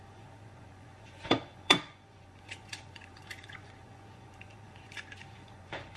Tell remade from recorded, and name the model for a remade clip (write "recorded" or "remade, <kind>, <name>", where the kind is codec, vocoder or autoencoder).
remade, vocoder, Vocos